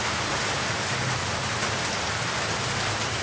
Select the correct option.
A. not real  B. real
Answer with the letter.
B